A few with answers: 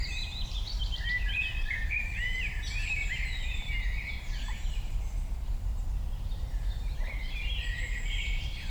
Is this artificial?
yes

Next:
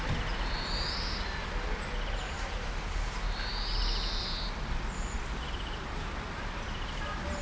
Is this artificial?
no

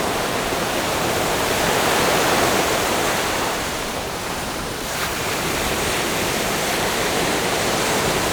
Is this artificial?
yes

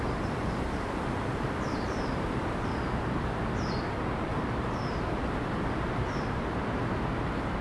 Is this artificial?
yes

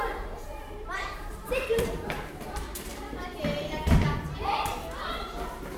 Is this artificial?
yes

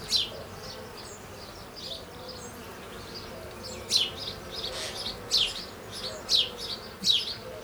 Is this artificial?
no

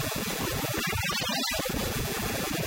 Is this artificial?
no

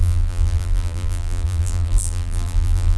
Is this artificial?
yes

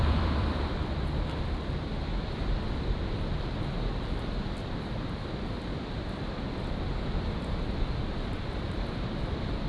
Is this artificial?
yes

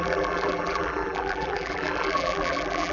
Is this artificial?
yes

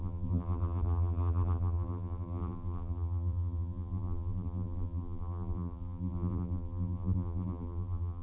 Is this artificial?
yes